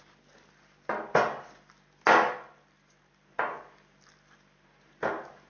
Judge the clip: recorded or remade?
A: recorded